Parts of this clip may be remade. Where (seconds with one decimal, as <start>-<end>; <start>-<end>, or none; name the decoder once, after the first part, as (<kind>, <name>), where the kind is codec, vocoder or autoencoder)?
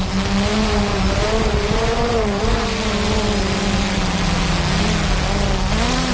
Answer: none